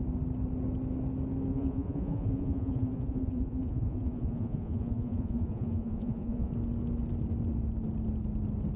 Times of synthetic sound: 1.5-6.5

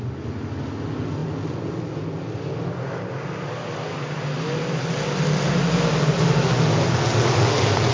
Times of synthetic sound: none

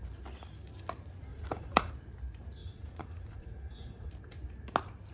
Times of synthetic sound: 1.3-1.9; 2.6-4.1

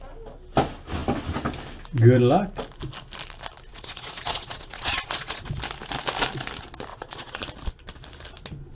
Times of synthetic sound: 3.7-5.5; 6.9-7.4